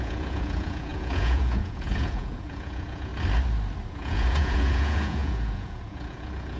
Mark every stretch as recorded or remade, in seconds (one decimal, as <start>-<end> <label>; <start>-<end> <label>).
0.0-3.1 remade; 3.1-3.9 recorded; 3.9-6.6 remade